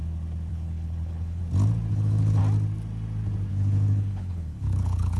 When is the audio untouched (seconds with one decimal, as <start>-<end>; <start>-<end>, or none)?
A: 0.0-0.5; 1.4-1.9; 2.4-3.5